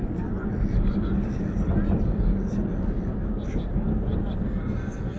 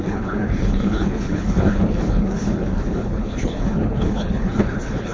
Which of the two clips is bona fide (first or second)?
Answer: first